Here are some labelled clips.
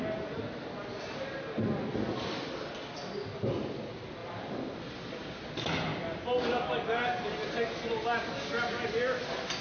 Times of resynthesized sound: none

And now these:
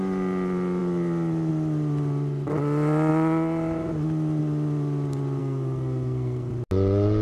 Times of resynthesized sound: 5.4-6.5 (codec, SNAC)

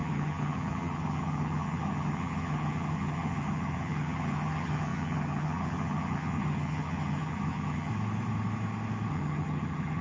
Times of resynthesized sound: 0.0-7.9 (vocoder, HiFi-GAN); 9.1-10.0

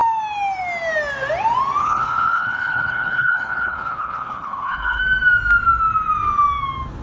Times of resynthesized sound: 1.8-5.0 (codec, HILCodec)

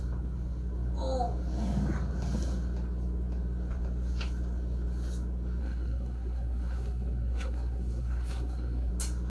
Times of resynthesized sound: 5.6-8.9 (codec, SNAC)

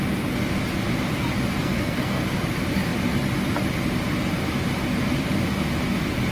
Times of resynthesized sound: 1.6-2.2 (codec, SNAC)

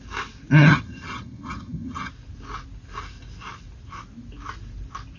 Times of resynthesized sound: 0.6-2.1 (vocoder, HiFi-GAN)

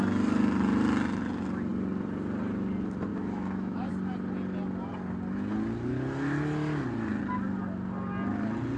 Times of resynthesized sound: 3.1-3.9 (autoencoder, DAC-VAE)